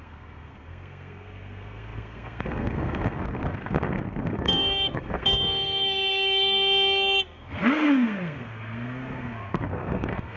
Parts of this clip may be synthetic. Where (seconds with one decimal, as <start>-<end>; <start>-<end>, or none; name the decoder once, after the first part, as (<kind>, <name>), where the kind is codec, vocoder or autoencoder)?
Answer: 0.0-10.4 (codec, SNAC)